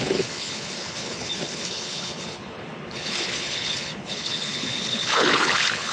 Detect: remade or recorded remade